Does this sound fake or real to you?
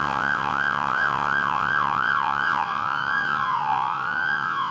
fake